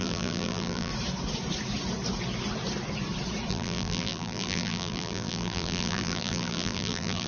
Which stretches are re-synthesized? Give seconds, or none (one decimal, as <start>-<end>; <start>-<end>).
0.0-0.9; 3.5-7.3